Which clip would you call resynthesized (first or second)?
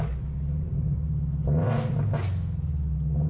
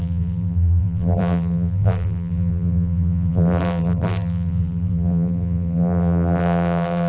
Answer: second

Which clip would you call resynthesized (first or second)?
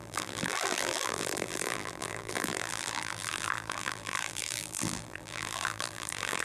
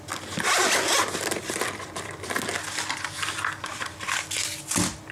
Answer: first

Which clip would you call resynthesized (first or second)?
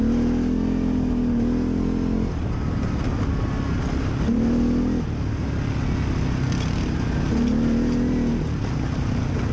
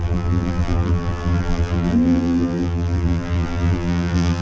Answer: second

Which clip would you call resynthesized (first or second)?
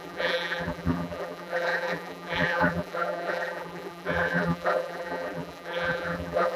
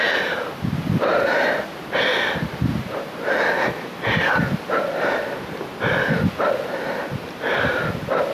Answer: first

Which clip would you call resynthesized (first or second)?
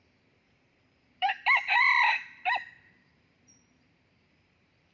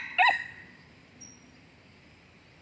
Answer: first